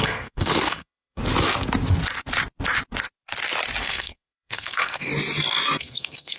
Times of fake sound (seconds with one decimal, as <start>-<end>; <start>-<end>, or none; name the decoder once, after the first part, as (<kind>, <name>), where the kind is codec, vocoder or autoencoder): 0.0-1.2 (codec, SNAC); 3.8-5.1; 5.8-6.4

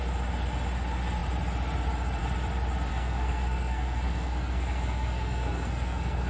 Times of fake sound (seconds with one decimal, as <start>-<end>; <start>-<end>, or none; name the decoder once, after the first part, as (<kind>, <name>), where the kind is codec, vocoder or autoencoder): 2.9-6.3 (codec, SNAC)

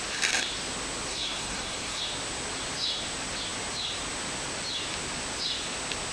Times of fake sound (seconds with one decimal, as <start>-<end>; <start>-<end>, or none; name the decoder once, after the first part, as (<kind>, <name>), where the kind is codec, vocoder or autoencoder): 1.1-2.0 (codec, SNAC)

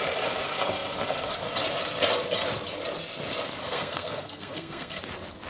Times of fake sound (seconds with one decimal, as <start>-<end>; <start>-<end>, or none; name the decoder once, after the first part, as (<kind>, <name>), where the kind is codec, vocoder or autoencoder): 3.6-5.0 (codec, SNAC)

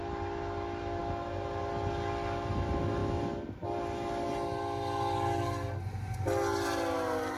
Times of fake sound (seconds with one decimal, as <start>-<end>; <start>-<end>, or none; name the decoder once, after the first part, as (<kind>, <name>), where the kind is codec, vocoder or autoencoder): none

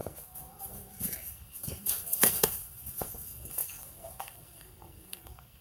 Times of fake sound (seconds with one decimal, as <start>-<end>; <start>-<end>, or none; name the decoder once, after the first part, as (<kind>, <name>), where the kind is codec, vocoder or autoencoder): 0.0-5.6 (codec, SNAC)

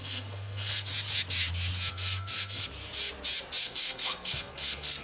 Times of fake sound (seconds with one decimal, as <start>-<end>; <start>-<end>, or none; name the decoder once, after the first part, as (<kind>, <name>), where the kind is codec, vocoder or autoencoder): 0.0-0.9 (codec, SNAC); 1.9-2.7; 3.6-5.0

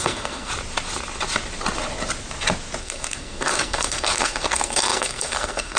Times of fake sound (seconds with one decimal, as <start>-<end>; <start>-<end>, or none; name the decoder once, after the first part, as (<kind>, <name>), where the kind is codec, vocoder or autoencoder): 0.0-0.5 (codec, SNAC); 2.8-5.8